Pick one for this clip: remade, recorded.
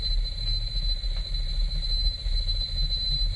recorded